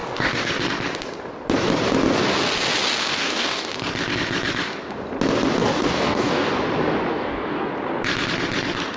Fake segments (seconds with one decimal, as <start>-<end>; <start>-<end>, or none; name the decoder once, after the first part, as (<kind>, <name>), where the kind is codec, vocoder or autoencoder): 0.0-0.5 (codec, DAC); 3.1-3.7; 5.6-6.5; 7.1-7.7